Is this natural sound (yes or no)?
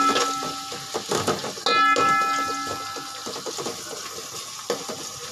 yes